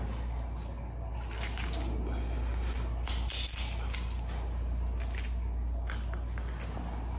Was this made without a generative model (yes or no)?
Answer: yes